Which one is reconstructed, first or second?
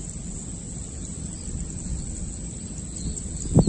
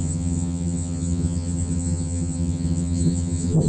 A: second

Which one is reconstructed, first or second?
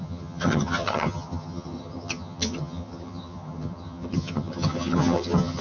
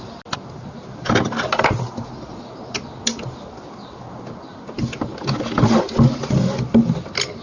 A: first